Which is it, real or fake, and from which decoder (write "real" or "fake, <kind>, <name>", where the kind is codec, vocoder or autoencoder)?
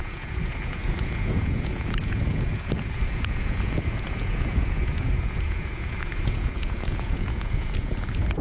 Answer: fake, vocoder, Vocos